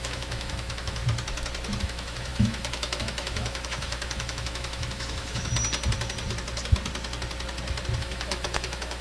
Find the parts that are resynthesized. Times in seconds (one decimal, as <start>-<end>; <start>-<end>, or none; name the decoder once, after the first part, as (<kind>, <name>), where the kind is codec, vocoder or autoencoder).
0.0-1.0 (autoencoder, DAC-VAE); 1.8-5.5; 8.0-9.0